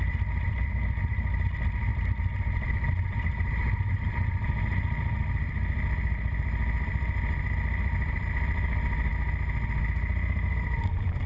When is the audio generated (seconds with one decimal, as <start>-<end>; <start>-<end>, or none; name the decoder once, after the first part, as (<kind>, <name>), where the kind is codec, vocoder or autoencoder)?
0.0-9.1 (vocoder, BigVGAN v2); 9.8-11.3